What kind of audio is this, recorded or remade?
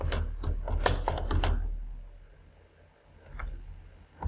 recorded